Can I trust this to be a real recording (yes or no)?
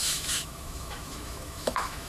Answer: no